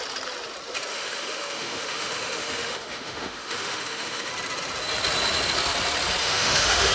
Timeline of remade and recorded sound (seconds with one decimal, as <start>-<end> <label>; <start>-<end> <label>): 0.0-0.9 recorded; 0.9-4.3 remade; 4.3-6.2 recorded; 6.2-6.9 remade